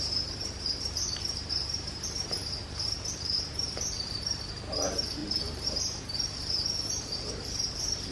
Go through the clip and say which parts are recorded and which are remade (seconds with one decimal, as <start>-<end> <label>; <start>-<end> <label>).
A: 0.0-2.6 remade; 2.6-3.5 recorded; 3.5-8.1 remade